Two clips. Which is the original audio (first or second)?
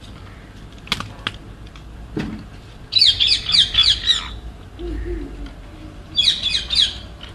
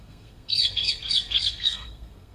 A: first